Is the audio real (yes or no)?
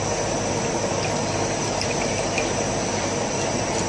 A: yes